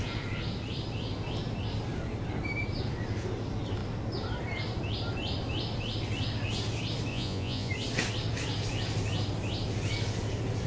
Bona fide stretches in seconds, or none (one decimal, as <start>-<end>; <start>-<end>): 0.0-7.1; 7.7-10.7